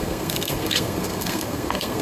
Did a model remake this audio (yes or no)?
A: yes